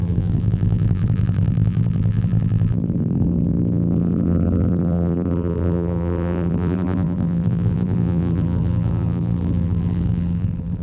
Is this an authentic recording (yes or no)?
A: no